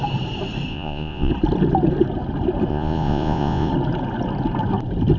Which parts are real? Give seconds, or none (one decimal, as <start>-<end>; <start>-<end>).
0.0-0.7; 1.3-2.7; 3.7-5.2